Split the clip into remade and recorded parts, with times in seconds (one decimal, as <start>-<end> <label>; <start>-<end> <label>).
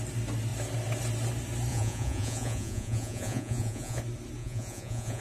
0.0-1.7 recorded; 1.7-4.0 remade; 4.0-4.4 recorded; 4.4-5.2 remade